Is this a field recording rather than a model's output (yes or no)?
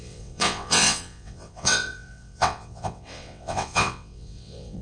no